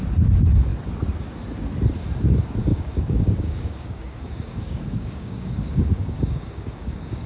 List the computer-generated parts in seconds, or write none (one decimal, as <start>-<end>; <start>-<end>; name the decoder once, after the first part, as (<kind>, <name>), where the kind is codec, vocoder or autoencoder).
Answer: 2.7-7.3 (codec, DAC)